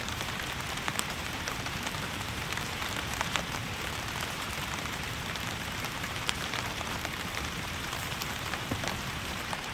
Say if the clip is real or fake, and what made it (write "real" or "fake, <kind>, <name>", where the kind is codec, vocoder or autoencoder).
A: fake, vocoder, BigVGAN v2